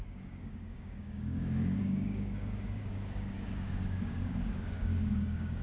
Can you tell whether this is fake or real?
fake